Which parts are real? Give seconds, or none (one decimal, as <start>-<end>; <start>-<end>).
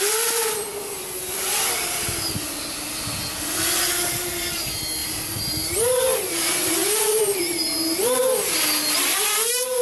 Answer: 0.0-0.7; 2.6-5.0; 7.6-9.8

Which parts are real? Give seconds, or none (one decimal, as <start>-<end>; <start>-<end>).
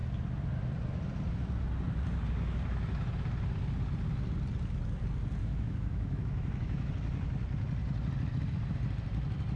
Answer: 0.0-5.4; 6.9-9.6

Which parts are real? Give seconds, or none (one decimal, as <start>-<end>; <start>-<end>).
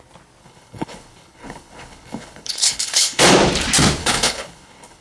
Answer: 0.0-0.4; 3.2-4.0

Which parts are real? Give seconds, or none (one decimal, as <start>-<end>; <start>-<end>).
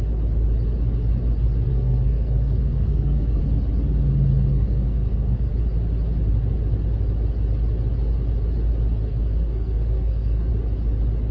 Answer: 0.0-1.7; 3.4-4.5; 5.5-9.1; 10.5-11.3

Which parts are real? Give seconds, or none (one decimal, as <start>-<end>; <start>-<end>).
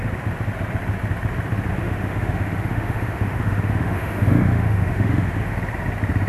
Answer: 0.0-1.8; 5.6-6.3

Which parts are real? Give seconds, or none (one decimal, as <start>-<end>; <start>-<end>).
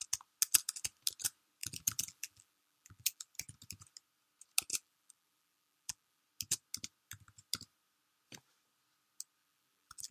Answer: 0.0-1.6; 3.4-4.7; 6.2-9.4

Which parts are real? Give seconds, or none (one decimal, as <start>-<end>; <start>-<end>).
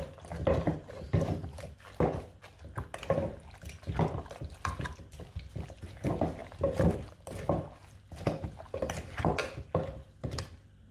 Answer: 0.0-6.4; 7.7-10.9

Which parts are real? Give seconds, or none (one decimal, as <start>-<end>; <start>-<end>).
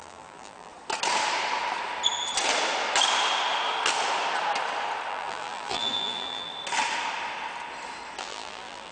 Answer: 0.7-5.1; 6.5-8.2